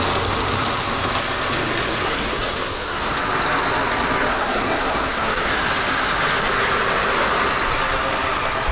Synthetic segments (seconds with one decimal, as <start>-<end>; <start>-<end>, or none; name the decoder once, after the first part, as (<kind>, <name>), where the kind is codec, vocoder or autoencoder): 2.0-3.1 (codec, SNAC); 4.3-5.6

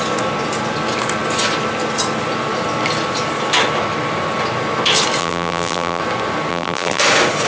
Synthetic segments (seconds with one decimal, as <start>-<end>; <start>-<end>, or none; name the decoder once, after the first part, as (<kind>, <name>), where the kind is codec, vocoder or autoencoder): 5.2-6.0 (vocoder, BigVGAN v2); 6.5-7.0

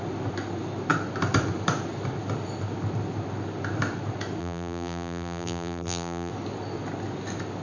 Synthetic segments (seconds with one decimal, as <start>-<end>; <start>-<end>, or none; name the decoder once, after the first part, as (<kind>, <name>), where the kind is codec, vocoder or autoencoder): 4.4-6.3 (vocoder, BigVGAN v2)

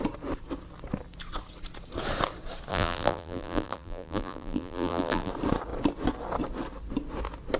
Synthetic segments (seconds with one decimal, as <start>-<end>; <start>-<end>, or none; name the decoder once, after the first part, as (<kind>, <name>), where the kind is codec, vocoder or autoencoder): 2.7-5.3 (vocoder, BigVGAN v2)

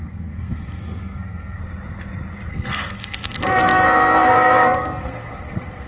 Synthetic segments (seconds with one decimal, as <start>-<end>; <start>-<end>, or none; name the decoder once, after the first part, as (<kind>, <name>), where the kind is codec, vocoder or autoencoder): 0.0-1.6 (codec, SNAC); 2.5-5.9

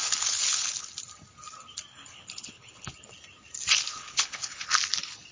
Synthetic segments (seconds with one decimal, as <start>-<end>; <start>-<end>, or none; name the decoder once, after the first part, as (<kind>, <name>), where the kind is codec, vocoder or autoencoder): 0.0-0.9 (codec, HILCodec); 1.9-2.9; 3.9-4.7

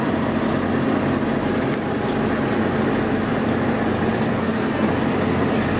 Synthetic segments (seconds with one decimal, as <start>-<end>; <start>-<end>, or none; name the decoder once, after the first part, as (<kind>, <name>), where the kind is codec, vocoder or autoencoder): 4.3-4.9 (codec, SNAC)

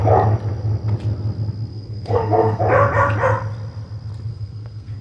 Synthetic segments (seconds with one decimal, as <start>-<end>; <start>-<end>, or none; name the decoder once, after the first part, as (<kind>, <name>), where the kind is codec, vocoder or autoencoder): 1.7-2.6 (codec, SNAC); 4.3-5.0